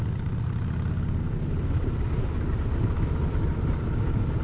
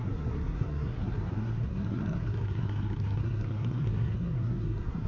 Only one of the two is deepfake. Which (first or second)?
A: second